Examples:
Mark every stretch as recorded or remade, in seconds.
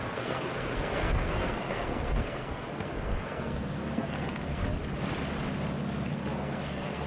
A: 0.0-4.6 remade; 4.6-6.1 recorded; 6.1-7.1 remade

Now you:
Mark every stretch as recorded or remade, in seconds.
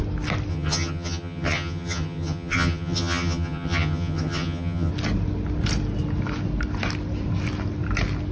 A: 0.0-0.5 recorded; 0.5-4.9 remade; 4.9-8.3 recorded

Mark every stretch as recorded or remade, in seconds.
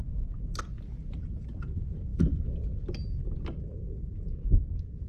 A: 0.0-5.1 recorded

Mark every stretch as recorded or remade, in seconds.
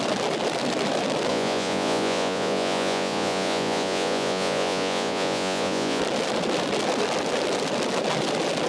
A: 0.0-1.3 recorded; 1.3-6.0 remade; 6.0-8.7 recorded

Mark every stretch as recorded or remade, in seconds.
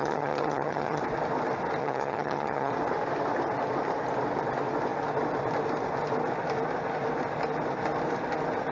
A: 0.0-1.0 remade; 1.0-1.8 recorded; 1.8-2.7 remade; 2.7-8.7 recorded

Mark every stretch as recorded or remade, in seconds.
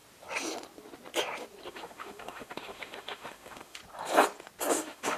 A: 0.0-1.7 recorded; 1.7-3.8 remade; 3.8-4.7 recorded; 4.7-5.2 remade